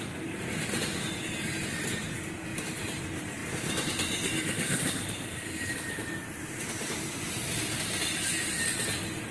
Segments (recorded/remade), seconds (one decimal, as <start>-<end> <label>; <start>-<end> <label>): 0.0-2.5 recorded; 2.5-3.0 remade; 3.0-3.4 recorded; 3.4-8.6 remade; 8.6-9.3 recorded